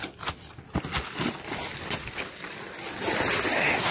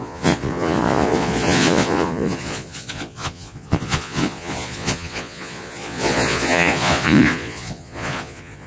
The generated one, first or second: second